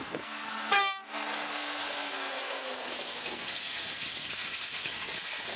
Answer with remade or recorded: remade